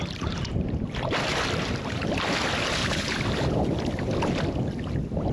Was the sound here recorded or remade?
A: remade